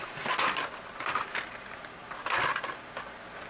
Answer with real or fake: real